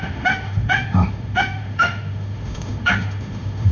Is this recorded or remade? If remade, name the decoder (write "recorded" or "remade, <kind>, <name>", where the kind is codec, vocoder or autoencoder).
remade, autoencoder, DAC-VAE